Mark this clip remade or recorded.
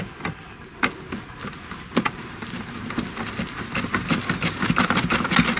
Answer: recorded